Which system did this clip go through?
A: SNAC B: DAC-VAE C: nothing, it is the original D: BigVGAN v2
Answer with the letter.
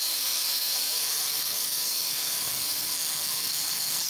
A